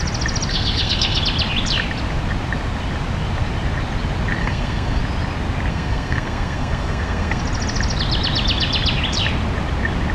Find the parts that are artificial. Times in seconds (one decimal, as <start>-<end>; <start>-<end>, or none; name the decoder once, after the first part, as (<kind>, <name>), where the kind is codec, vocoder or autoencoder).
0.5-1.2 (codec, SNAC); 4.4-5.0; 5.7-7.4